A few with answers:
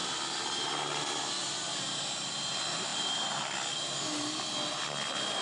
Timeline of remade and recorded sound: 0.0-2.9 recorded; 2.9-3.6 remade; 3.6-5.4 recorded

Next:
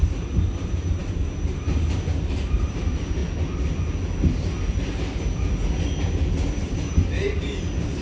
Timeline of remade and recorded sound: 0.0-3.2 remade; 3.2-4.6 recorded; 4.6-5.6 remade; 5.6-6.6 recorded; 6.6-8.0 remade

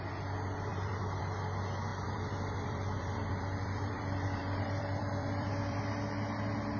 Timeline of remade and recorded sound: 0.0-0.7 recorded; 0.7-1.2 remade; 1.2-1.9 recorded; 1.9-5.8 remade; 5.8-6.8 recorded

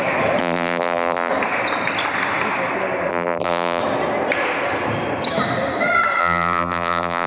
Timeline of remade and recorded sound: 0.0-0.4 recorded; 0.4-1.3 remade; 1.3-3.1 recorded; 3.1-3.8 remade; 3.8-6.2 recorded; 6.2-7.3 remade

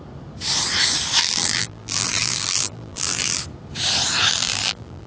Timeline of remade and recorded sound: 0.0-1.2 recorded; 1.2-3.4 remade; 3.4-4.3 recorded; 4.3-5.1 remade

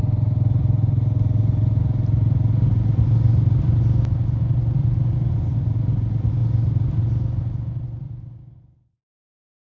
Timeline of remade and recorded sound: 0.0-9.6 recorded